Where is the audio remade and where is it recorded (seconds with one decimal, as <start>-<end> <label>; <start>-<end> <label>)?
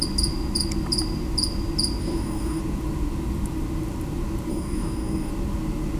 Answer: 0.0-2.0 recorded; 2.0-2.6 remade; 2.6-4.5 recorded; 4.5-5.3 remade; 5.3-6.0 recorded